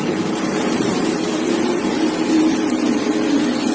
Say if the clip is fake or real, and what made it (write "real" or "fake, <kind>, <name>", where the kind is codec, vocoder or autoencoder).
fake, vocoder, BigVGAN v2